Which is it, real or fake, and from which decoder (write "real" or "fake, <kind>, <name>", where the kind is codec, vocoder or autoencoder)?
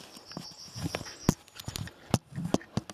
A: real